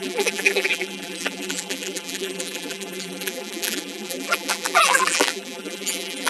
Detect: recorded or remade remade